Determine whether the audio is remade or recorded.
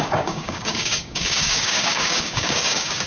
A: remade